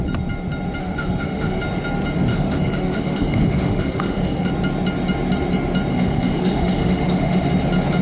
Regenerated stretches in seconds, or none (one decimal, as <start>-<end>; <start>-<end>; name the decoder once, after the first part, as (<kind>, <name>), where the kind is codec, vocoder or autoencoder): 0.8-1.6 (autoencoder, DAC-VAE); 2.3-4.5; 5.9-7.5